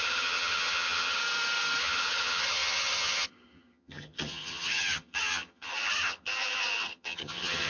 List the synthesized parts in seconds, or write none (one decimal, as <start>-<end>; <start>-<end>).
0.0-1.2; 1.8-7.7